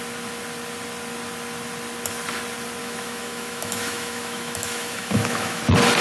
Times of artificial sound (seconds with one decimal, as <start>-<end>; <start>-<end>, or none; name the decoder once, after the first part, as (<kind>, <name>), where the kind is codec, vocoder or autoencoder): 2.8-5.6 (autoencoder, DAC-VAE)